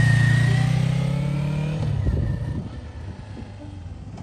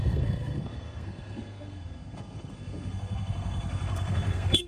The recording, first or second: first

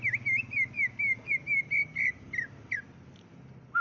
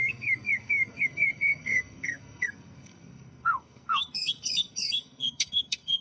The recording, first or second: first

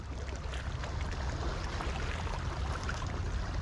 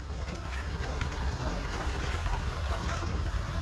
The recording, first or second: first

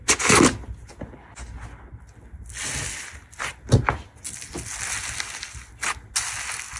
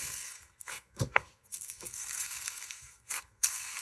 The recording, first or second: first